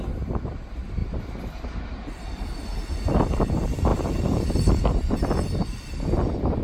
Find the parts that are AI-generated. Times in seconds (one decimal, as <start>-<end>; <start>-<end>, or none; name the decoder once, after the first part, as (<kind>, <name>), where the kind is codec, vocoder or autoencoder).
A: 3.9-4.7 (vocoder, BigVGAN v2)